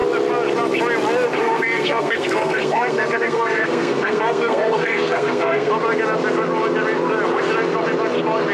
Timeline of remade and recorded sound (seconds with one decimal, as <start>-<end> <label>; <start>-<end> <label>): 0.0-1.4 recorded; 1.4-5.7 remade; 5.7-8.5 recorded